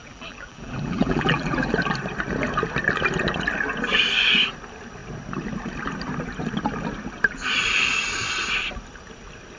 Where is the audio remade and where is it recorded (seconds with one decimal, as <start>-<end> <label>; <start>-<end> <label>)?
0.0-1.7 remade; 1.7-9.6 recorded